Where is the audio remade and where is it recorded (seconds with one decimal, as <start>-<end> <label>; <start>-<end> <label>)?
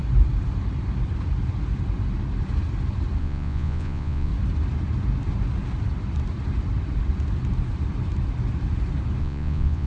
0.0-3.2 recorded; 3.2-4.3 remade; 4.3-9.2 recorded; 9.2-9.9 remade